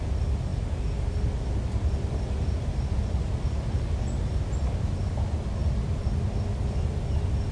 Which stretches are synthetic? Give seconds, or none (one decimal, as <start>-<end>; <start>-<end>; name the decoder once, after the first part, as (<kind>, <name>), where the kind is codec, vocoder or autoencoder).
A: none